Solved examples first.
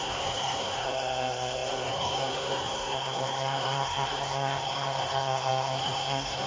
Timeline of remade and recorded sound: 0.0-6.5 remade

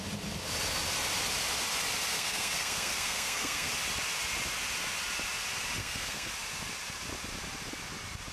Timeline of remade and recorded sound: 0.0-2.1 recorded; 2.1-3.7 remade; 3.7-5.8 recorded; 5.8-6.3 remade; 6.3-8.3 recorded

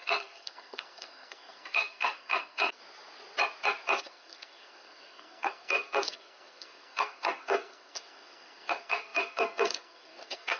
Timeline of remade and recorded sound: 0.0-2.8 remade; 2.8-4.0 recorded; 4.0-10.6 remade

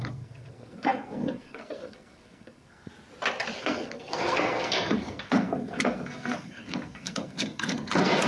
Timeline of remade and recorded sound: 0.0-2.9 remade; 2.9-3.6 recorded; 3.6-8.3 remade